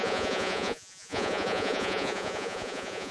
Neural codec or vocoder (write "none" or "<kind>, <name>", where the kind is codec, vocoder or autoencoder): vocoder, Vocos